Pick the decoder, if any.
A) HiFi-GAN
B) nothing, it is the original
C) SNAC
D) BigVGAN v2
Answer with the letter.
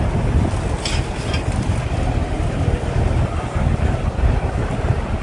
B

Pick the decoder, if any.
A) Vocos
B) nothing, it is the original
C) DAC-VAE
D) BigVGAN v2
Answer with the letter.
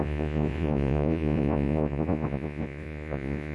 A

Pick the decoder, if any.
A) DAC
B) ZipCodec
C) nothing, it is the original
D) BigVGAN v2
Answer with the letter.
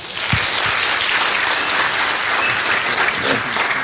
C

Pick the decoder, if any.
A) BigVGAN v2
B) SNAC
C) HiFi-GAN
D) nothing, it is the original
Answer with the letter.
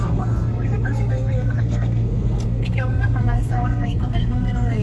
B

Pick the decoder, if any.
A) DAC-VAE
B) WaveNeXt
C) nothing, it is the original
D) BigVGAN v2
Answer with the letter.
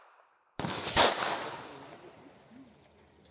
C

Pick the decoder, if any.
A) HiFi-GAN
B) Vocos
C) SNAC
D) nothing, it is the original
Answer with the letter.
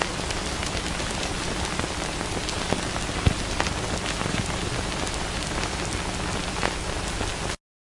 D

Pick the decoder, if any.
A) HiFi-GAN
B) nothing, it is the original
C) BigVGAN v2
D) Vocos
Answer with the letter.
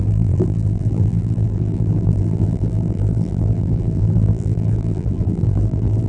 C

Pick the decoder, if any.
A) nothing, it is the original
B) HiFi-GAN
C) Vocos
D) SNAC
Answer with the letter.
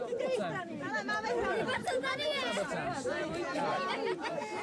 A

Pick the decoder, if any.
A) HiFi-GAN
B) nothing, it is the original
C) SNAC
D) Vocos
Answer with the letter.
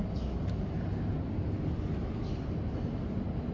B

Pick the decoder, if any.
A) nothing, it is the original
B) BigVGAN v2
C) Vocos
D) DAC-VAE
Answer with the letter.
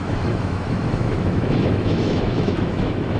D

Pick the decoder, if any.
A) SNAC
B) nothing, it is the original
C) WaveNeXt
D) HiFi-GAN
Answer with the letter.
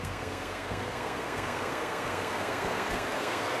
A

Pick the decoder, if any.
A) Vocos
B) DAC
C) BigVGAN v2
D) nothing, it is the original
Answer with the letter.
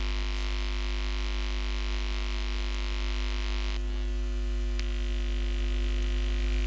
D